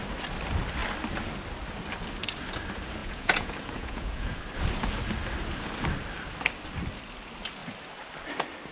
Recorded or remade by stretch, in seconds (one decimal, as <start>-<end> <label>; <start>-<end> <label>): 0.0-3.0 recorded; 3.0-4.4 remade; 4.4-8.7 recorded